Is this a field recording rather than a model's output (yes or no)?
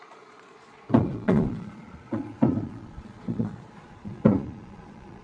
no